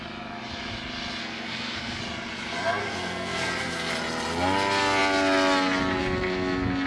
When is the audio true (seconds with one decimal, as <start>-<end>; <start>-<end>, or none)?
0.0-1.2; 2.0-2.8; 3.9-6.9